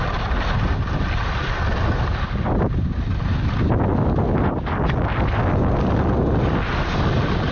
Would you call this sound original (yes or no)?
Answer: yes